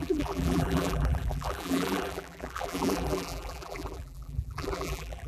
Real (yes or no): no